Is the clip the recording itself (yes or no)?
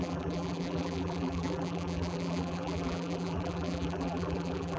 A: no